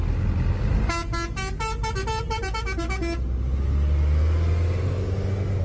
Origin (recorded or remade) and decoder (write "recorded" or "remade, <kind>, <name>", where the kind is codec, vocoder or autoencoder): recorded